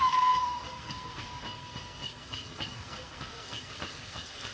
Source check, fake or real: fake